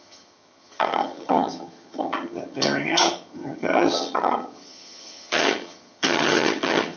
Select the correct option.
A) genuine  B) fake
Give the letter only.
B